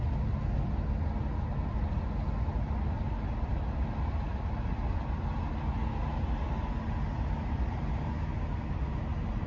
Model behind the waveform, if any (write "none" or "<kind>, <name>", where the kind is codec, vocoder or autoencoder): none